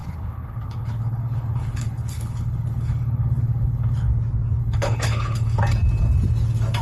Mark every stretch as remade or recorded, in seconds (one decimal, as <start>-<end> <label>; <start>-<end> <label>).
0.0-4.1 remade; 4.1-4.6 recorded; 4.6-5.6 remade; 5.6-6.8 recorded